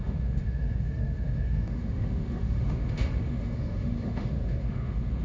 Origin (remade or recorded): remade